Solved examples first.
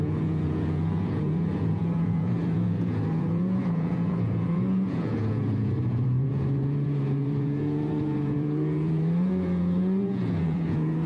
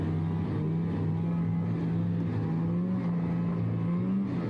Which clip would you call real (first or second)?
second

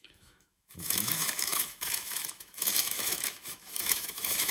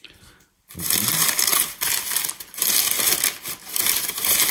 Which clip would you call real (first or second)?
second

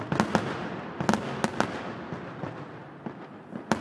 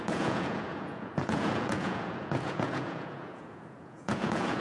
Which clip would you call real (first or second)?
first